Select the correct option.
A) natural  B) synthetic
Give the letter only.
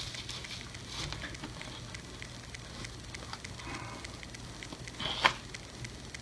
A